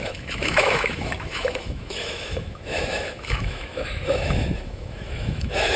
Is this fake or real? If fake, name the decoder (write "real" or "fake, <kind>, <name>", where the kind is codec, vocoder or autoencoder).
fake, autoencoder, DAC-VAE